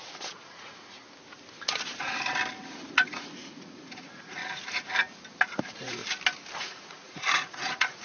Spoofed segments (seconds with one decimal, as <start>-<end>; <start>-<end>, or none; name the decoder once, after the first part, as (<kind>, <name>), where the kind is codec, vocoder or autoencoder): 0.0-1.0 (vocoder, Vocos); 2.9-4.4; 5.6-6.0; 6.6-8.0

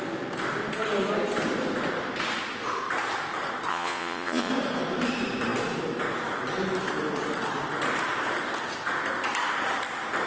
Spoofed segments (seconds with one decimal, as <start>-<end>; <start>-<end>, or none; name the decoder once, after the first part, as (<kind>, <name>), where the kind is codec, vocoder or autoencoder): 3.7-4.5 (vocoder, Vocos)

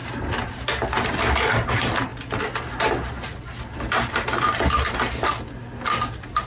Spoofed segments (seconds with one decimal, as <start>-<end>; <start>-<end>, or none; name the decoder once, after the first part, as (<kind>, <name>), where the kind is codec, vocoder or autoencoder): none

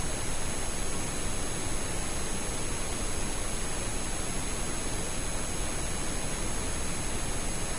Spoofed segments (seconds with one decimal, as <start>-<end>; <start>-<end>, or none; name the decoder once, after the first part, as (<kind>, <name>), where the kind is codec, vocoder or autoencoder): none